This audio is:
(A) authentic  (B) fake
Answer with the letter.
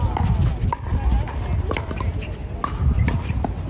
A